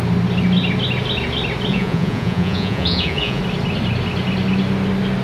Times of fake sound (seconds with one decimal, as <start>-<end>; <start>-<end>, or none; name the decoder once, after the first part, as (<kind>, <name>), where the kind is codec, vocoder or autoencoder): 1.7-3.4 (vocoder, Vocos)

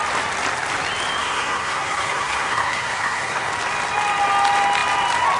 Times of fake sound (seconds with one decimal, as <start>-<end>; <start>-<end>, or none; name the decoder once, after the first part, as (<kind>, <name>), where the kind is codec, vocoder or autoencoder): 1.2-3.5 (codec, SNAC)

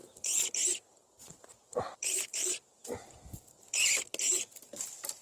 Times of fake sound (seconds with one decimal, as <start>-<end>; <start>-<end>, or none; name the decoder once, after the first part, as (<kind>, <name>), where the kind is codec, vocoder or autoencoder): none

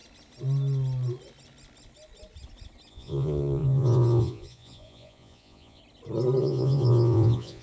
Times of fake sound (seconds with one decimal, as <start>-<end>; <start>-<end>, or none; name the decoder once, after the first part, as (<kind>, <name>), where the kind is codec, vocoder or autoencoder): 2.9-5.8 (vocoder, Vocos); 6.4-7.6

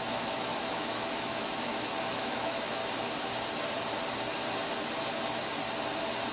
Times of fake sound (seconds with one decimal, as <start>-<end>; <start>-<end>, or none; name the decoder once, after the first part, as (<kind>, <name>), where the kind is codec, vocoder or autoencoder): 0.0-2.8 (autoencoder, DAC-VAE)

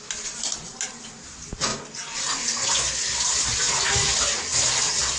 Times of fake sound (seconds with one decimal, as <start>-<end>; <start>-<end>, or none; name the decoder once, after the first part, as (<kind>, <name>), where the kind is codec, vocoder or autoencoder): none

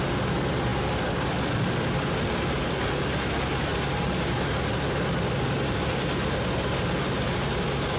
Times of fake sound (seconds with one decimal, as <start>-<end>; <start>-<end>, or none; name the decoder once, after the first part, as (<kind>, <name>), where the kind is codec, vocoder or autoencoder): none